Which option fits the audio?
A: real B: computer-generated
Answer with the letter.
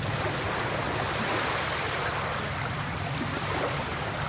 A